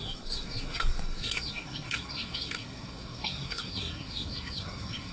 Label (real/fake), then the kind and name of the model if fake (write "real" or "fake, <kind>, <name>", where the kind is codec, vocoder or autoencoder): fake, codec, SNAC